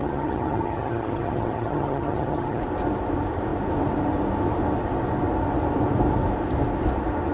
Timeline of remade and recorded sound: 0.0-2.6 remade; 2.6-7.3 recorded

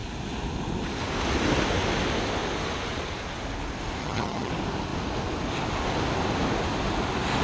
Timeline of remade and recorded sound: 0.0-4.0 recorded; 4.0-4.5 remade; 4.5-7.4 recorded

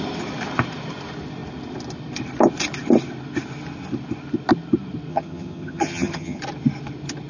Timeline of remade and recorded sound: 0.0-5.1 recorded; 5.1-6.4 remade; 6.4-7.3 recorded

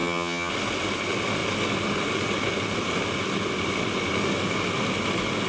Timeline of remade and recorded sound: 0.0-0.5 remade; 0.5-5.5 recorded

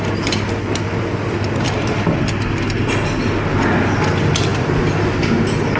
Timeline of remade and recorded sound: 0.0-5.8 recorded

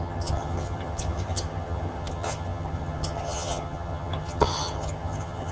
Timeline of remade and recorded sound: 0.0-5.5 remade